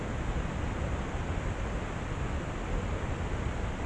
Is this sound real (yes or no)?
yes